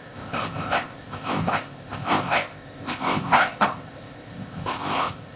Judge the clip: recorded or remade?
remade